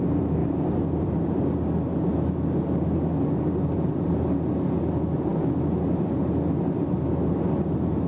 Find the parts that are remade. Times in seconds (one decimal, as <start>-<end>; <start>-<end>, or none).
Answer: 0.4-1.4

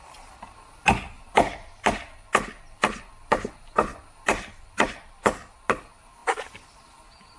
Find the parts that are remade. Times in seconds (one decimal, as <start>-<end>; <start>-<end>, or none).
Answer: none

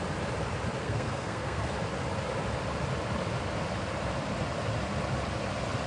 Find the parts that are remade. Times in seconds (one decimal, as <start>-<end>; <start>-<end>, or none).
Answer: 0.8-1.7

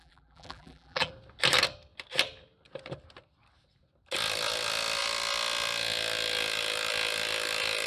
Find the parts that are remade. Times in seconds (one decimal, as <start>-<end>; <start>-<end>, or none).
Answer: 0.0-1.1

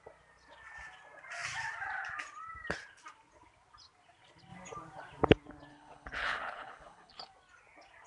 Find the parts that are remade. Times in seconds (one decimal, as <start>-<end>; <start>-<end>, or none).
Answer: 5.7-7.3